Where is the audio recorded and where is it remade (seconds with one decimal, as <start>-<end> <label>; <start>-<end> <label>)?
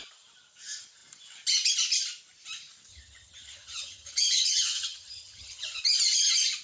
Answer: 0.0-2.9 recorded; 2.9-5.8 remade; 5.8-6.6 recorded